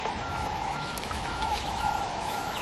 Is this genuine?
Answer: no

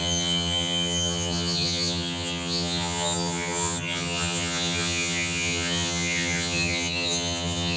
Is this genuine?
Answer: no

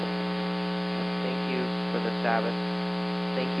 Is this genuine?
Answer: yes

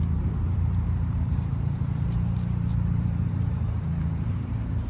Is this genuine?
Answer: no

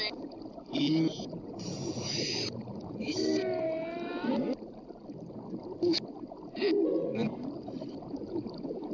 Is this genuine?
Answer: yes